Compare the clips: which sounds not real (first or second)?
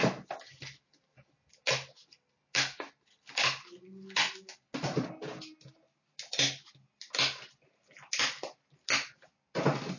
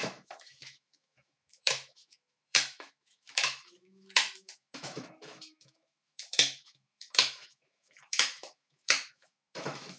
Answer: second